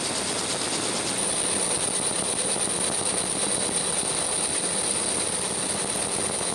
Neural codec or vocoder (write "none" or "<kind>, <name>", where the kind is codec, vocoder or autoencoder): none